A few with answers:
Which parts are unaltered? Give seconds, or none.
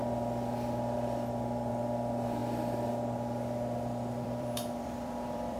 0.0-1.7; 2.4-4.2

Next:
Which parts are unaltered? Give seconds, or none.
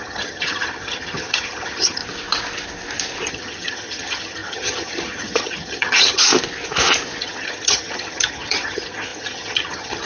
2.0-3.3; 6.3-7.2